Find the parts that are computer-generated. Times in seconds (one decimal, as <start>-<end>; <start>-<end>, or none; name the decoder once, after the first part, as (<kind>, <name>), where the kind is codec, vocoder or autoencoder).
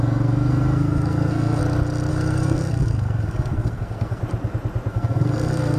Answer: 0.0-1.6 (codec, SNAC); 2.1-4.2; 4.9-5.8